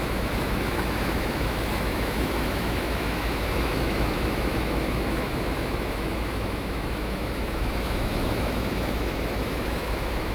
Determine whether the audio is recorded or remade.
remade